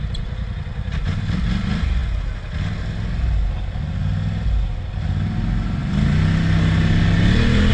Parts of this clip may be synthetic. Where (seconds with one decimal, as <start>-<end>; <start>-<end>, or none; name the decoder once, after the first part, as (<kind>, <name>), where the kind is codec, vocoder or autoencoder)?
none